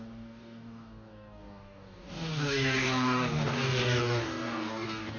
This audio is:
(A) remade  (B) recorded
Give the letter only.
A